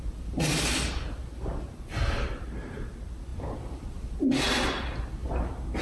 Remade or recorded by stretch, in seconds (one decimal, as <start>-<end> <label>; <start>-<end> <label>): 0.0-5.8 recorded